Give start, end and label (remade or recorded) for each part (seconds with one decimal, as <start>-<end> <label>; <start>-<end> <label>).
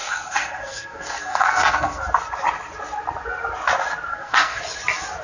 0.0-2.0 remade; 2.0-4.1 recorded; 4.1-4.6 remade; 4.6-5.2 recorded